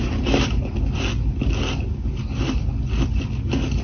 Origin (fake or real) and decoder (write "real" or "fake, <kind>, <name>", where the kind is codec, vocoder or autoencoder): real